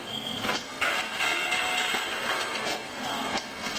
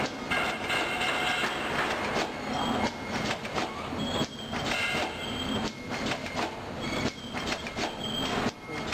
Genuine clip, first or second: second